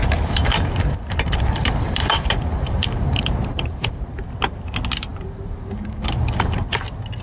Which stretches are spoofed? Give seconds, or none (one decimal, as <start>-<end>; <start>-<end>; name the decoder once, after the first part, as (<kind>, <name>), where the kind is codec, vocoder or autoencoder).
0.0-4.3 (vocoder, BigVGAN v2); 5.1-6.6